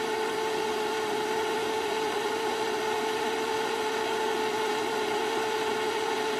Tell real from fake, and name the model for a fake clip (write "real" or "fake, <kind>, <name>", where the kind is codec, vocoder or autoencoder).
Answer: real